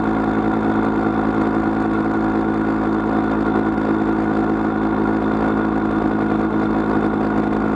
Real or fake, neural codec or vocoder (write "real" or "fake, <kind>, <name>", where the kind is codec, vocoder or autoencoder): real